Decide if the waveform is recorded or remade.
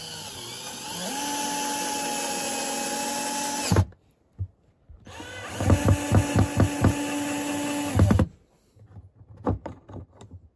recorded